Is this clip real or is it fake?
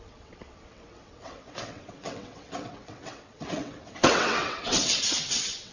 fake